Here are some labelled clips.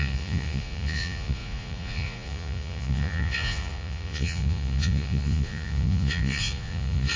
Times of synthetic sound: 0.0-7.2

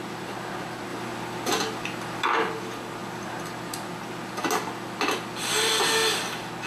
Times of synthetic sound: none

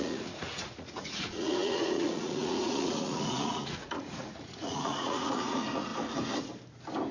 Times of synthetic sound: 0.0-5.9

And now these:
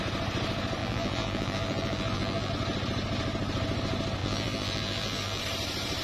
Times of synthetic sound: 0.8-2.5; 4.2-5.4

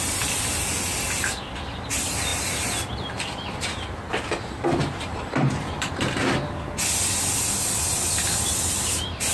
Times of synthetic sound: 4.8-5.9

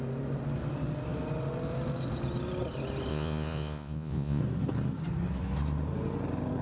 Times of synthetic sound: 3.1-4.4